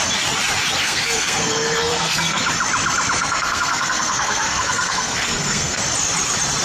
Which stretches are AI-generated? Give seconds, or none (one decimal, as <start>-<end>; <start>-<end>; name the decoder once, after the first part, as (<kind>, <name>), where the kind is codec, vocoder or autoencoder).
0.8-2.4 (codec, SNAC); 3.2-5.8